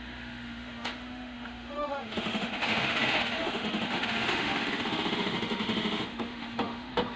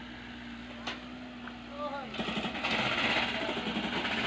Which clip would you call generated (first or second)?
first